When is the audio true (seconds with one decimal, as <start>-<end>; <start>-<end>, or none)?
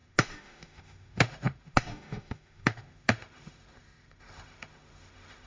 none